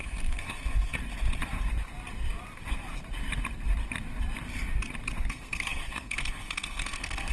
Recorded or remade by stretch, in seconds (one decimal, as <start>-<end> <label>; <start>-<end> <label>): 0.0-1.0 remade; 1.0-5.3 recorded; 5.3-7.3 remade